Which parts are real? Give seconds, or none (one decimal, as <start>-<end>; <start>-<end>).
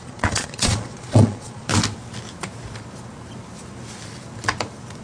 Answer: 1.7-5.0